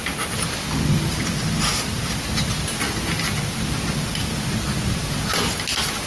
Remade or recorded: recorded